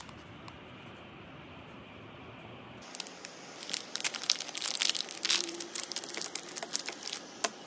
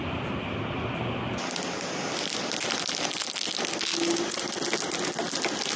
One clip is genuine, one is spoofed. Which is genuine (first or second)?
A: second